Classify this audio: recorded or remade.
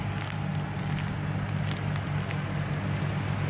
recorded